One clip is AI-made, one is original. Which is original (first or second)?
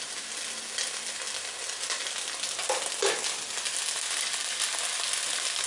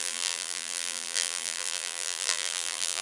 first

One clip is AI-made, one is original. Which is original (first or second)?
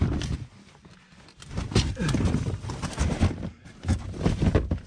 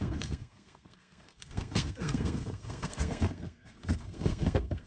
first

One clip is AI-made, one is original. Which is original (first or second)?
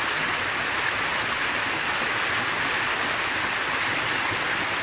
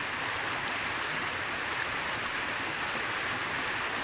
first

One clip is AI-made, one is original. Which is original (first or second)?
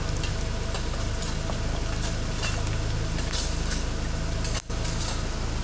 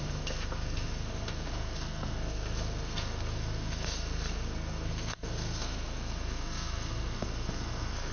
first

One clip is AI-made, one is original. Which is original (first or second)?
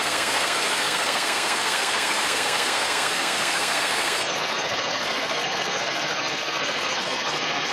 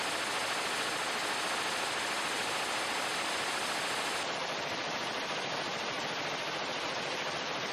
second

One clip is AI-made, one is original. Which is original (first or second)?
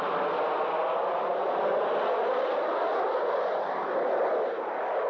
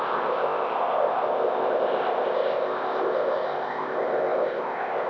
first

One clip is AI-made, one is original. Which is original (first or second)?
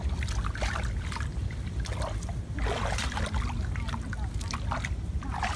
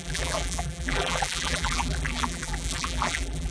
first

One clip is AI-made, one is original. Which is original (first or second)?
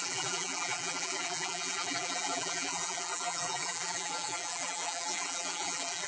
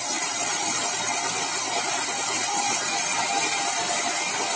second